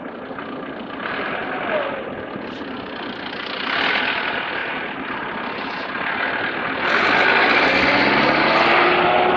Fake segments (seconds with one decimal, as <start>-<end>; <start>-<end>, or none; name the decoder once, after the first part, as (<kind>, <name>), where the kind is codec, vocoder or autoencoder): none